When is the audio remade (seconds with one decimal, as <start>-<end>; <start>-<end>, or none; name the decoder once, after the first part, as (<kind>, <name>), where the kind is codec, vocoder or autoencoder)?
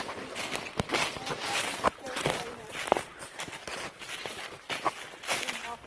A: 1.4-3.1 (vocoder, BigVGAN v2)